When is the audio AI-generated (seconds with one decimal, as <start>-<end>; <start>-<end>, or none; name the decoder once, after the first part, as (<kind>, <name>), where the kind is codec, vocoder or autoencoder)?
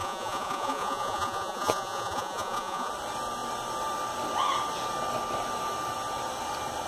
0.0-2.9 (vocoder, Vocos)